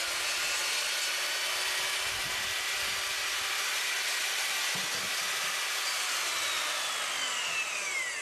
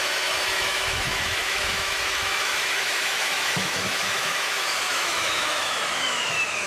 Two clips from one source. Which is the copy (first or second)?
second